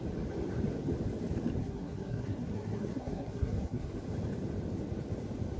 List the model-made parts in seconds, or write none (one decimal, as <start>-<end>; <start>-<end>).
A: 1.6-3.9